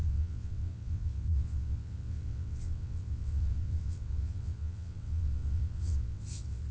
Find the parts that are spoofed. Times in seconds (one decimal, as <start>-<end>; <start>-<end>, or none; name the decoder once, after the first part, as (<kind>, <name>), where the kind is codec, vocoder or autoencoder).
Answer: 0.0-6.7 (vocoder, WaveNeXt)